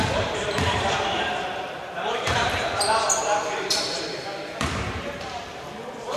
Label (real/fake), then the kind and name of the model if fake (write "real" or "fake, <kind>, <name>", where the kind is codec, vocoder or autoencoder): fake, vocoder, BigVGAN v2